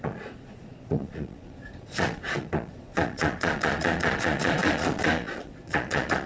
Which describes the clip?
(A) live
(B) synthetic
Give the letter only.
B